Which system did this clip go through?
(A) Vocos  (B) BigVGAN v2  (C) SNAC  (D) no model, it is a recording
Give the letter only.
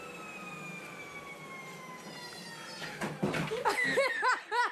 D